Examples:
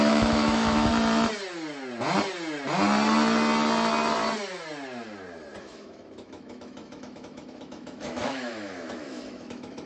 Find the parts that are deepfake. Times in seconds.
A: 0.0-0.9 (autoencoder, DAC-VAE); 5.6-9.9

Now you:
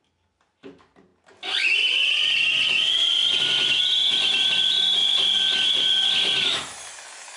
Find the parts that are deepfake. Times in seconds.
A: none

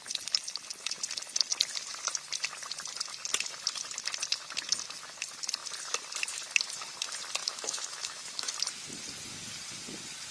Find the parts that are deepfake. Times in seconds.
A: 7.4-8.5 (autoencoder, DAC-VAE)